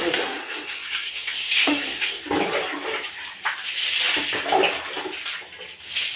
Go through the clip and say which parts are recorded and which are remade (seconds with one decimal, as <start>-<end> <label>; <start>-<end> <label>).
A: 0.0-2.2 remade; 2.2-6.2 recorded